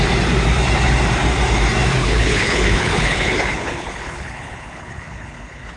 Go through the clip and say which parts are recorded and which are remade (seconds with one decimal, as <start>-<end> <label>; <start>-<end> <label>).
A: 0.0-2.0 recorded; 2.0-5.8 remade